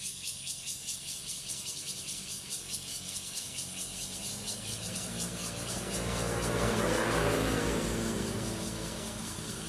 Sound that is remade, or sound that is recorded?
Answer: remade